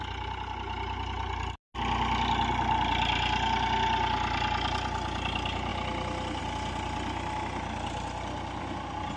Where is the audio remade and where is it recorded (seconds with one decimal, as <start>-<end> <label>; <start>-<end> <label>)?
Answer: 0.0-9.2 recorded